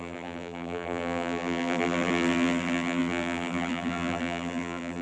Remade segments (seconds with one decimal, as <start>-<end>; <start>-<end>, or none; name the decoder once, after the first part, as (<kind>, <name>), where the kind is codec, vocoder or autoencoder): 0.0-5.0 (vocoder, BigVGAN v2)